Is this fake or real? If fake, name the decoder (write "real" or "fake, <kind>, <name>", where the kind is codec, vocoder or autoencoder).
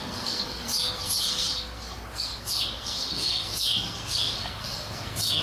fake, codec, SNAC